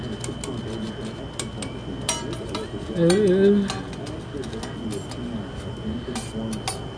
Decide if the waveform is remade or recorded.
recorded